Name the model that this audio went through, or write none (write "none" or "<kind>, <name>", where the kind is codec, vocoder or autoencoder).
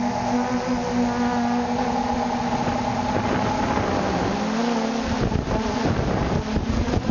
none